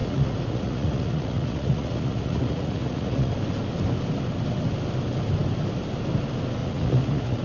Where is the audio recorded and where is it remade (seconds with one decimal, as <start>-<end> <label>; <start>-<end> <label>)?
0.0-3.3 remade; 3.3-6.6 recorded; 6.6-7.4 remade